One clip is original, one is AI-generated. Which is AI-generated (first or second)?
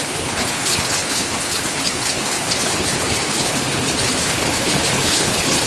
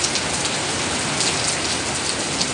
first